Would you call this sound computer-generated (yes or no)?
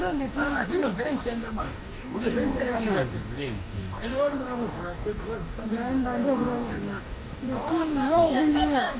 yes